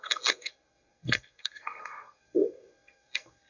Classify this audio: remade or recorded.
remade